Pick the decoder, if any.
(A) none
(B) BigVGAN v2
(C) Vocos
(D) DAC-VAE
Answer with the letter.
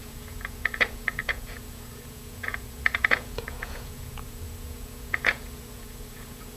C